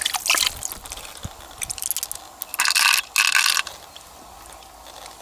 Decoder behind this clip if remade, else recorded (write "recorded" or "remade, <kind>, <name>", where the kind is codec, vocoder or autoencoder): recorded